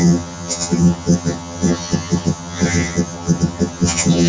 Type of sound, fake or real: fake